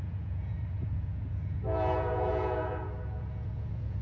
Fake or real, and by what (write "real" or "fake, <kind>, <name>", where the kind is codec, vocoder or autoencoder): fake, vocoder, Vocos